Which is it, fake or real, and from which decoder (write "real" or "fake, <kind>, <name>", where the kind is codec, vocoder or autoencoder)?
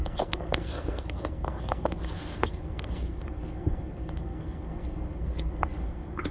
fake, codec, SNAC